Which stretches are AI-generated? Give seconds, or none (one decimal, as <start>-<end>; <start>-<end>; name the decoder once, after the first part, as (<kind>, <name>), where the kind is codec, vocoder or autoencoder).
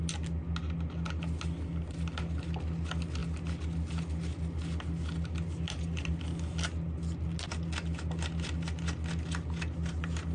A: none